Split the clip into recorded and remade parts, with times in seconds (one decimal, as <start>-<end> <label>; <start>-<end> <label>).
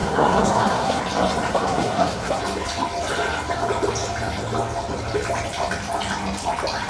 0.0-1.0 remade; 1.0-1.5 recorded; 1.5-2.4 remade; 2.4-6.9 recorded